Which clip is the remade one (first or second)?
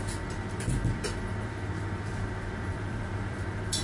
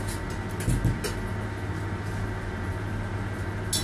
first